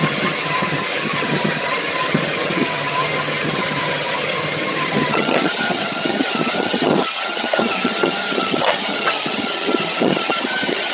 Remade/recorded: remade